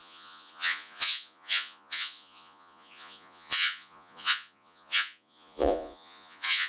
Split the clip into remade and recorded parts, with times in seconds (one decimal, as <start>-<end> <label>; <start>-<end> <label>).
0.0-6.7 remade